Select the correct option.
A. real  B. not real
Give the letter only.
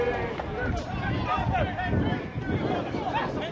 A